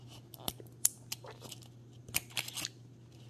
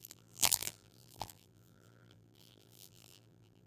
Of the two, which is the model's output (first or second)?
second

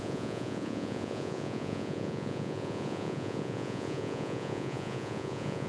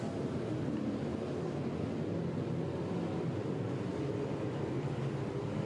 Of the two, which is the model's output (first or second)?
first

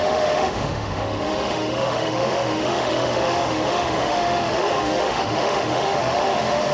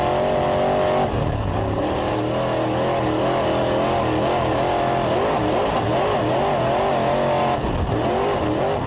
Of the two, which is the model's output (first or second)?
first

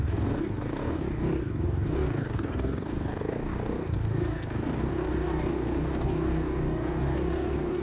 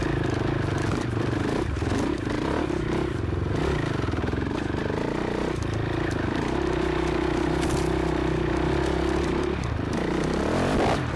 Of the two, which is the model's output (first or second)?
first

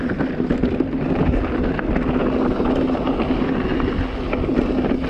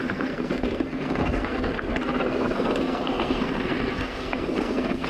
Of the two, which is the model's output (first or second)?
second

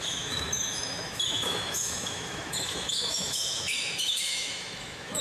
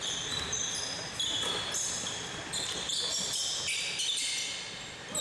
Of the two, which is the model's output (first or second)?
first